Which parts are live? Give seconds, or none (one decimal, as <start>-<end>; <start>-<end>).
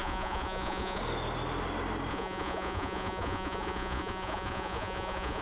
1.0-2.1